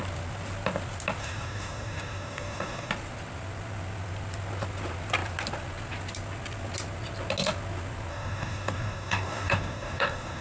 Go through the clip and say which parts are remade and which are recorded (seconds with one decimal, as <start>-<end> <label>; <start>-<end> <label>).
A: 0.0-1.2 recorded; 1.2-2.9 remade; 2.9-8.1 recorded; 8.1-10.4 remade